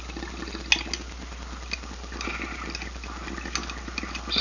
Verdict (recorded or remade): recorded